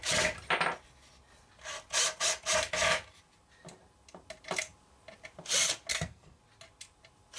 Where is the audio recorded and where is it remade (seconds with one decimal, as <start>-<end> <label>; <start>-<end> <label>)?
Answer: 0.0-5.9 recorded; 5.9-6.4 remade; 6.4-7.4 recorded